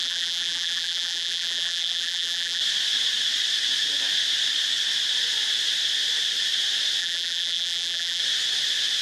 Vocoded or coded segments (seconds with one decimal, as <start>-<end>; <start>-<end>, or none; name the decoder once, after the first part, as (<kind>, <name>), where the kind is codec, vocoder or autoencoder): 0.0-2.6 (vocoder, BigVGAN v2); 7.0-8.2